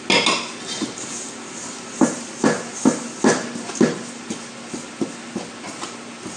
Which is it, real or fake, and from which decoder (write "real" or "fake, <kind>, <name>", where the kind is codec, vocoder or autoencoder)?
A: real